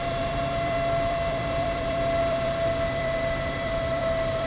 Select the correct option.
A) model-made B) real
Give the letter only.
A